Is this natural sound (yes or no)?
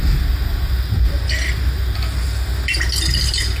yes